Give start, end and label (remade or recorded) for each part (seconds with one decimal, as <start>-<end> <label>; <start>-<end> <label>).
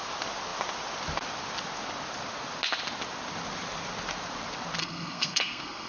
0.0-4.8 recorded; 4.8-5.9 remade